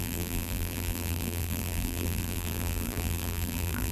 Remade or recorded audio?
remade